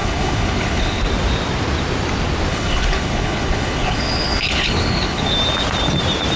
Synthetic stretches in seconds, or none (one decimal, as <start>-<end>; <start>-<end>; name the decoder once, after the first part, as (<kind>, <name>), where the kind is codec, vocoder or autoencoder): 0.0-1.0 (codec, HILCodec); 2.5-5.3